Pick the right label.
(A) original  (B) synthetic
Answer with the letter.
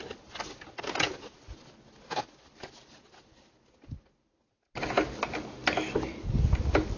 A